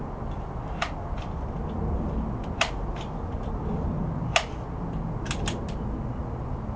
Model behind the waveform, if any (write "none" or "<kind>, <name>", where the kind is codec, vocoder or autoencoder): none